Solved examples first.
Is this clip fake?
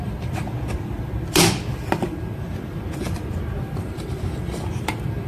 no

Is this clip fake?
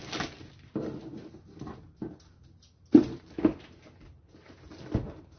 no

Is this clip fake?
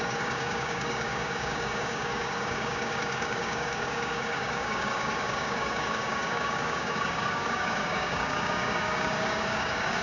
yes